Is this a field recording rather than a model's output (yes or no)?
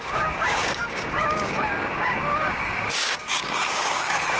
no